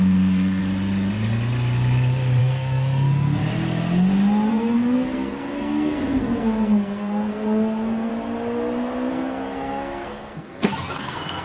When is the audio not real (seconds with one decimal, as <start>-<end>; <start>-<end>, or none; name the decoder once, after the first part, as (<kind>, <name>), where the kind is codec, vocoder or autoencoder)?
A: 0.0-0.6 (codec, SNAC); 2.4-3.4; 4.5-8.1; 9.1-11.4